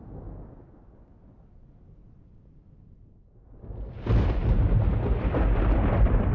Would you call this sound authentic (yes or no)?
yes